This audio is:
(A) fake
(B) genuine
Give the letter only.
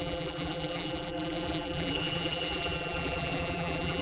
A